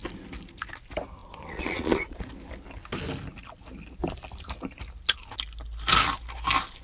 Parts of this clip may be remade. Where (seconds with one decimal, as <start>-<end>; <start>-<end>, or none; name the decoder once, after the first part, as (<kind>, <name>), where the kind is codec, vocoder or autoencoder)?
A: 1.2-2.2 (vocoder, Vocos)